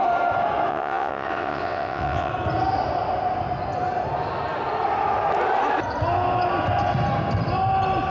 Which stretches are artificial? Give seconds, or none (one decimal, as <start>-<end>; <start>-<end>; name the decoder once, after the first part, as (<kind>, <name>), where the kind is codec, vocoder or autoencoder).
0.7-2.3 (vocoder, WaveNeXt)